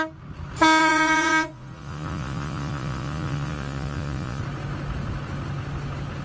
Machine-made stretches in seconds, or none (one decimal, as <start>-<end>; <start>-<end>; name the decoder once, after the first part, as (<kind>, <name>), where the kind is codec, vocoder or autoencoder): 0.8-4.4 (vocoder, Vocos)